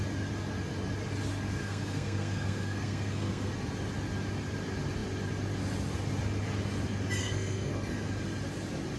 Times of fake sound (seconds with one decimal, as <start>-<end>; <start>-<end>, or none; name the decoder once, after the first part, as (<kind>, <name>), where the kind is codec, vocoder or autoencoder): 1.6-3.5 (codec, SNAC); 7.2-8.1